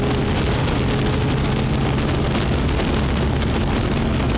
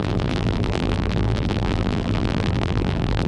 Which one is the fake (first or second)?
second